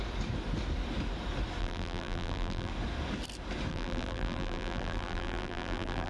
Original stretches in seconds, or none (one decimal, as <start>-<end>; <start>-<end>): 0.0-1.6; 2.7-3.7